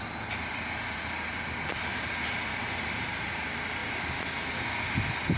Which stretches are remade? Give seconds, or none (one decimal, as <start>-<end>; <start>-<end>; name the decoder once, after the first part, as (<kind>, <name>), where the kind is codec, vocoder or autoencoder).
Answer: 2.5-3.3 (vocoder, BigVGAN v2)